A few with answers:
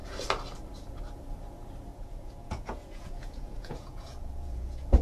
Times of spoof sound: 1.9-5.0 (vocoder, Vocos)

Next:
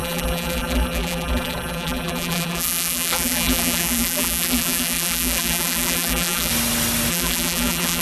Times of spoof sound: 0.0-6.5 (vocoder, BigVGAN v2); 7.1-8.0